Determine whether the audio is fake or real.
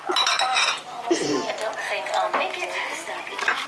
real